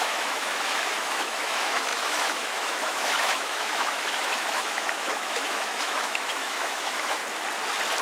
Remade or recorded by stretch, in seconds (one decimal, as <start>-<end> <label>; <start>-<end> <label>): 0.0-7.2 remade; 7.2-8.0 recorded